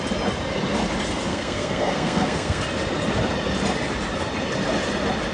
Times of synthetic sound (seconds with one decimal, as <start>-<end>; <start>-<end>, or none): 1.3-2.6